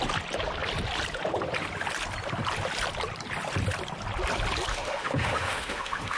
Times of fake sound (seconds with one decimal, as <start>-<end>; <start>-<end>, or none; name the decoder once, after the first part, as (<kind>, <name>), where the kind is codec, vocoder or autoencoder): 4.7-6.2 (autoencoder, DAC-VAE)